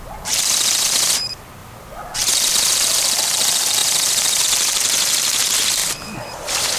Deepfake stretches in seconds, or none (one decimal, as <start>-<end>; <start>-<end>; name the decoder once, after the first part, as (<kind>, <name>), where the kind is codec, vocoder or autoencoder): 0.0-6.8 (vocoder, BigVGAN v2)